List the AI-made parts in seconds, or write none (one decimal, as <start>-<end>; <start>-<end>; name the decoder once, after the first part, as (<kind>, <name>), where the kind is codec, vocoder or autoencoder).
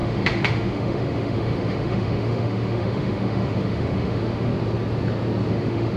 0.0-4.5 (autoencoder, DAC-VAE); 5.5-6.0